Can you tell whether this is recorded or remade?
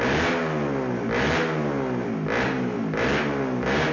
recorded